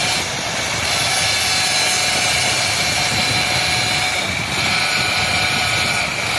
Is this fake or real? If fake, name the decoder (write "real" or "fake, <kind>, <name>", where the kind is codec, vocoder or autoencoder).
real